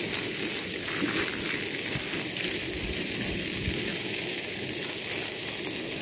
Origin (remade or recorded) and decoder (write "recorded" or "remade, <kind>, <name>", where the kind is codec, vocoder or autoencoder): recorded